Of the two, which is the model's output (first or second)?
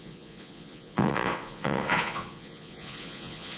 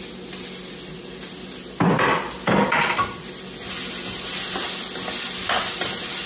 first